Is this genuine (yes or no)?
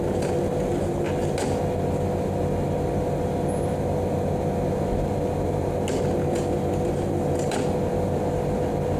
yes